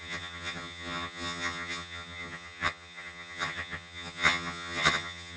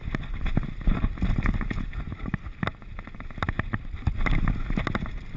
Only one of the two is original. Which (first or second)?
second